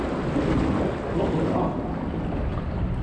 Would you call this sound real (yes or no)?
yes